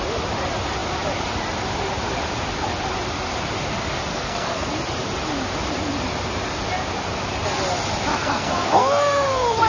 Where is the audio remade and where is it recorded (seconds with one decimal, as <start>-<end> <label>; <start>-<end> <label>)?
0.0-4.1 recorded; 4.1-4.7 remade; 4.7-8.1 recorded; 8.1-9.7 remade